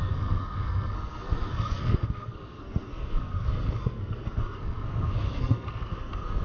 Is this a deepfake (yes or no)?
yes